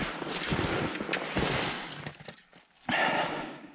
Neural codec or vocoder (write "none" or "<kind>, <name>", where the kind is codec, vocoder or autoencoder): none